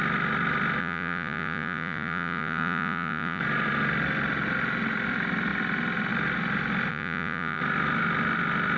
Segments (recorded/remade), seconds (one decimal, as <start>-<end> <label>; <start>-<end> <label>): 0.0-0.8 recorded; 0.8-3.4 remade; 3.4-6.9 recorded; 6.9-7.6 remade; 7.6-8.8 recorded